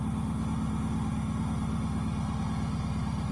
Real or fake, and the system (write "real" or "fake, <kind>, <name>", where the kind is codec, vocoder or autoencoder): real